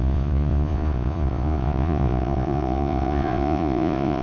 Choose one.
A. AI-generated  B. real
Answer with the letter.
A